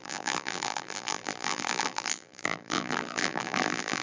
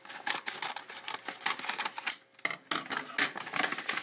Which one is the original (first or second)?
second